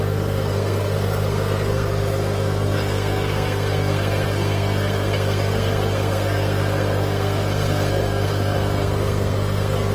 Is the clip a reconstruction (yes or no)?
yes